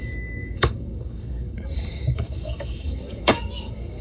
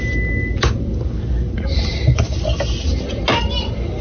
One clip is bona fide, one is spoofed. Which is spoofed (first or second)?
first